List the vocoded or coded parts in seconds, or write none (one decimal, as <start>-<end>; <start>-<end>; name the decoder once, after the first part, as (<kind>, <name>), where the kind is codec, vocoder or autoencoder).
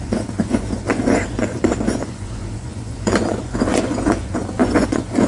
0.0-5.3 (vocoder, Vocos)